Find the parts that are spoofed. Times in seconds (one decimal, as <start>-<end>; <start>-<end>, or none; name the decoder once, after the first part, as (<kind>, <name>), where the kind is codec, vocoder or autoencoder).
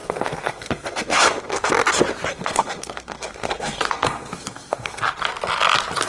0.0-1.7 (codec, SNAC); 2.3-5.0